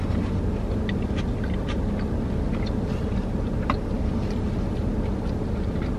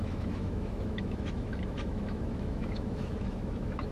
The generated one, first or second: second